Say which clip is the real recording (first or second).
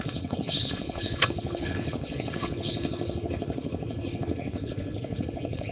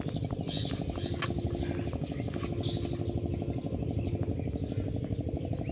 second